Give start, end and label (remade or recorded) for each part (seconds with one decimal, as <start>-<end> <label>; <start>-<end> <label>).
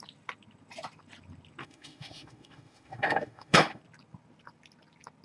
0.0-1.6 recorded; 1.6-3.8 remade; 3.8-5.2 recorded